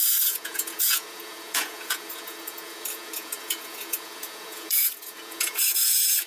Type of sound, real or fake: fake